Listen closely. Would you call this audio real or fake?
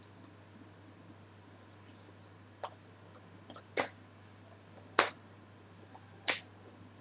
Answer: real